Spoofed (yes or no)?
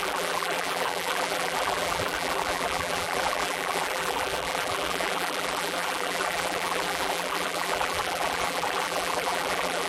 yes